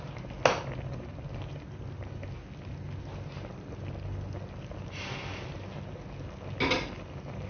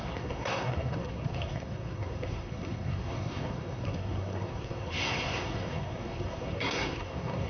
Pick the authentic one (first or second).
first